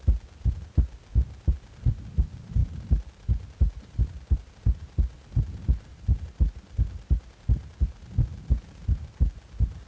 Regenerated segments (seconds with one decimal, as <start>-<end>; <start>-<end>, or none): none